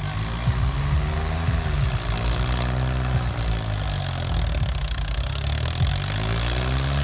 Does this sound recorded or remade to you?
recorded